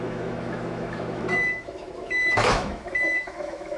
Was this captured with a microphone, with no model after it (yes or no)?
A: no